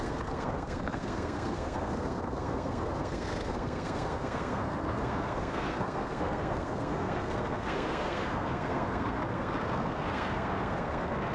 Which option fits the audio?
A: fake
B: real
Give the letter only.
A